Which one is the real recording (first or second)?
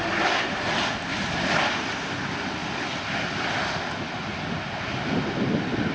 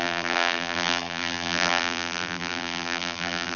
first